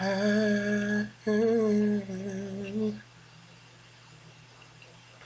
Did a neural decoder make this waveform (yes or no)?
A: no